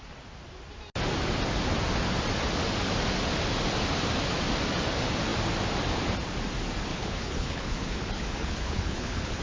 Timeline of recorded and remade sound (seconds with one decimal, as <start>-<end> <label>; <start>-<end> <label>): 0.0-6.9 recorded; 6.9-9.4 remade